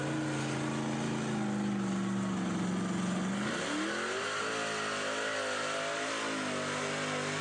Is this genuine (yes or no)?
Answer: yes